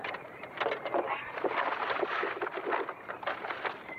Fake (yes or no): no